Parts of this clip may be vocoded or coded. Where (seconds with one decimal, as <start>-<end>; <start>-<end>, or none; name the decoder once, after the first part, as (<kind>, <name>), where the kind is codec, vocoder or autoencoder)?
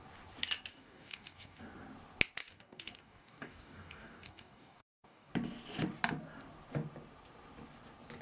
0.7-1.6 (codec, DAC); 2.4-5.3